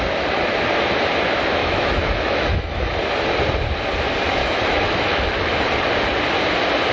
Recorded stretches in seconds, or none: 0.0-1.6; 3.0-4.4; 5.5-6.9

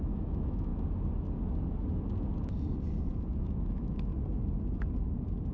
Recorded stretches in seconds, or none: 0.7-3.4; 4.1-5.5

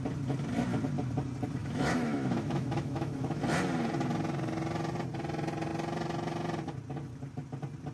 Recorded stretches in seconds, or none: 0.0-1.6; 3.4-7.9

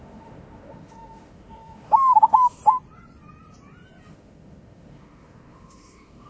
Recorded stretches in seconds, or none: 2.6-4.1

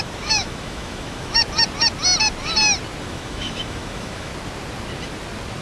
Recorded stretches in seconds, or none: 1.4-3.0; 4.3-5.6

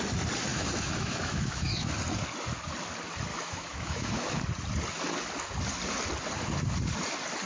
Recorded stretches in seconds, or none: 0.0-0.5; 1.9-3.3; 4.4-7.5

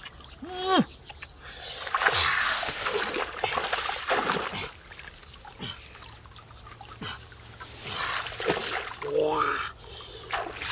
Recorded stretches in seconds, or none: 0.0-2.4; 3.0-10.7

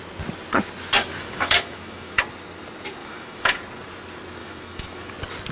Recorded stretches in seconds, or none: 0.0-1.0; 2.2-3.0; 3.6-4.4; 5.1-5.5